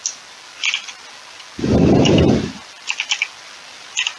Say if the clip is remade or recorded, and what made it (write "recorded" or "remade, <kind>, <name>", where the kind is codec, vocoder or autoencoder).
recorded